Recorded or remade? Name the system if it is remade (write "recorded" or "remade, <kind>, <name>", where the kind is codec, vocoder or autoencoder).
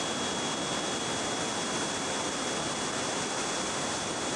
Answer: recorded